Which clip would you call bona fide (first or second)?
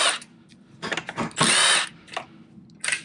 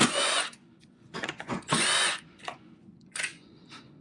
first